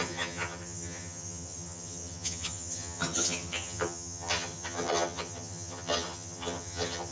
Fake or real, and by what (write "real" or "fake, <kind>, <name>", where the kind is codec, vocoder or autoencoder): fake, vocoder, HiFi-GAN